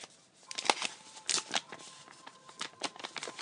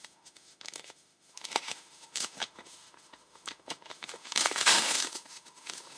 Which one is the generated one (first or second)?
second